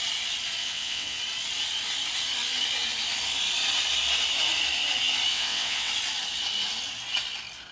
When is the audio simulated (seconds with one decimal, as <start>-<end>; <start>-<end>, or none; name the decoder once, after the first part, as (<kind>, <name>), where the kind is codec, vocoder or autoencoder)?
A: 0.6-1.2 (vocoder, WaveNeXt); 5.3-5.9